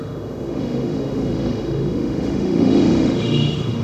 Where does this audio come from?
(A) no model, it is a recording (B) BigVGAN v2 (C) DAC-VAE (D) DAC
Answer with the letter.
C